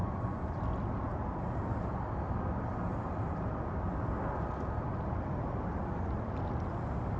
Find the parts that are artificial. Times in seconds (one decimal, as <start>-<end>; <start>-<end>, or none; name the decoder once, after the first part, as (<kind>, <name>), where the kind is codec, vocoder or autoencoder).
0.0-0.6 (vocoder, Vocos)